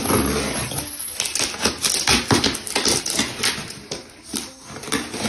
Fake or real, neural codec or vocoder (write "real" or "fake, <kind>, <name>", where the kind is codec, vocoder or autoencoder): real